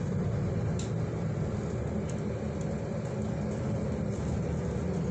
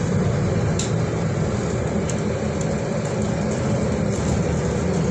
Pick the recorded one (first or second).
first